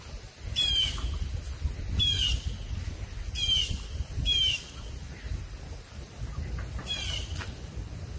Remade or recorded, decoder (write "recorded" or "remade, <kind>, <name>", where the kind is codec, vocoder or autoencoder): recorded